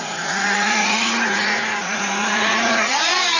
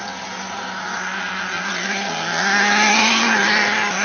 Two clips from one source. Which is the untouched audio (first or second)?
second